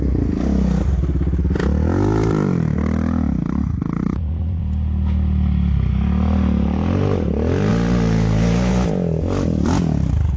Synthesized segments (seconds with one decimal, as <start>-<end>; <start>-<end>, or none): 4.0-4.6

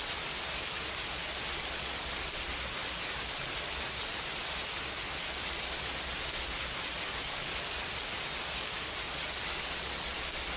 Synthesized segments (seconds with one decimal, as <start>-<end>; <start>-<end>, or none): none

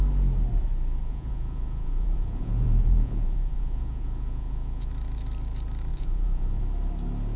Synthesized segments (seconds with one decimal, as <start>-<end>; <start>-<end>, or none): 1.0-4.9; 5.9-6.6

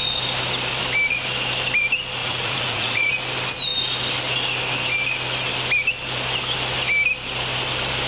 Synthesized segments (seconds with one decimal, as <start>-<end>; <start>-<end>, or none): 2.2-3.1